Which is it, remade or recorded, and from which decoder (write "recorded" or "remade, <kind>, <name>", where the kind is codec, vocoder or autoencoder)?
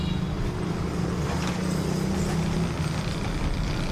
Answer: recorded